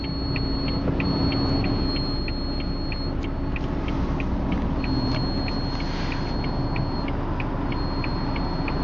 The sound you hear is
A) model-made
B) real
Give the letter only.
B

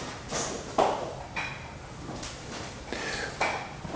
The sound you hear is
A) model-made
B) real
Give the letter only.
B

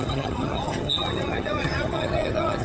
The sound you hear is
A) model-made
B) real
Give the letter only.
A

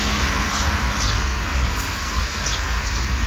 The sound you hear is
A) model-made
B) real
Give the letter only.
A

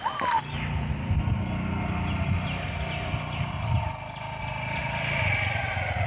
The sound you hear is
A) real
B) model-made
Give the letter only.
A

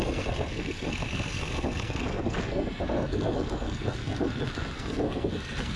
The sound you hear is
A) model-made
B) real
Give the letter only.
A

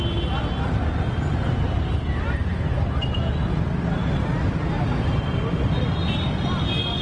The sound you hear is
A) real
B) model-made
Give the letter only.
A